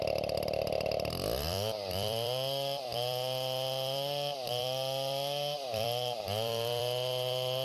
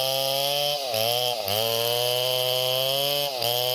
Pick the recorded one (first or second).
second